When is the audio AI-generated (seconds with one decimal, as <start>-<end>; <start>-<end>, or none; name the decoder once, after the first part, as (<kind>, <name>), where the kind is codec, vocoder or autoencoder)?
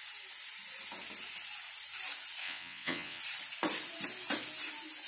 2.4-3.2 (vocoder, WaveNeXt)